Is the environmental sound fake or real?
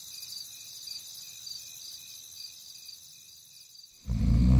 real